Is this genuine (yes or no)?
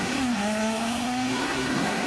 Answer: no